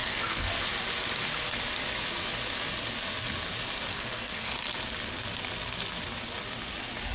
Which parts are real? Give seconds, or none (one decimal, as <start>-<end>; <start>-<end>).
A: 0.5-3.9; 4.5-7.1